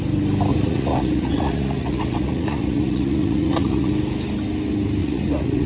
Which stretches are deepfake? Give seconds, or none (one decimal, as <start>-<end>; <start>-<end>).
0.5-3.9; 5.0-5.7